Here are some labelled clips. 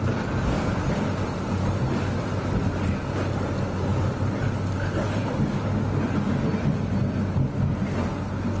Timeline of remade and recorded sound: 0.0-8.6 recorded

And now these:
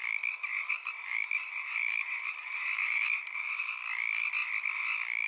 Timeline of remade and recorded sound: 0.0-0.5 recorded; 0.5-3.3 remade; 3.3-5.3 recorded

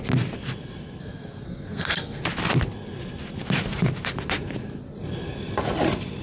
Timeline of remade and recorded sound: 0.0-1.0 recorded; 1.0-2.2 remade; 2.2-6.2 recorded

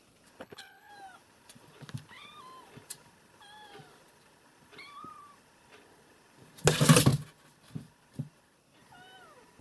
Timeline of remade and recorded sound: 0.0-0.4 recorded; 0.4-0.9 remade; 0.9-9.6 recorded

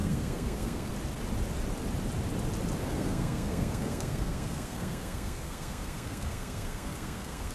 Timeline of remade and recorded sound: 0.0-0.9 remade; 0.9-2.8 recorded; 2.8-7.5 remade

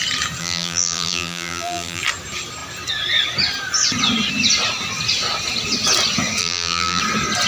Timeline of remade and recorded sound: 0.0-0.4 recorded; 0.4-2.0 remade; 2.0-6.4 recorded; 6.4-7.0 remade; 7.0-7.5 recorded

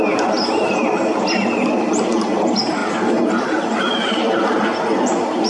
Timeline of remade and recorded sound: 0.0-5.5 recorded

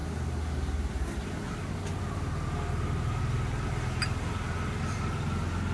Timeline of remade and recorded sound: 0.0-5.7 recorded